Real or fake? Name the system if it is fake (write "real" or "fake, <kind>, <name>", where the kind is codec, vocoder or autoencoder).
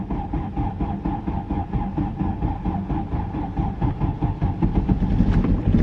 real